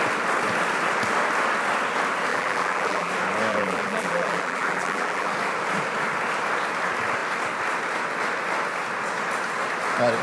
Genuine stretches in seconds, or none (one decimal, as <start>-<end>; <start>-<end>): 0.0-2.3; 3.1-3.5; 5.3-10.2